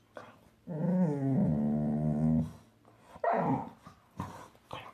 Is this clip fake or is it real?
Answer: real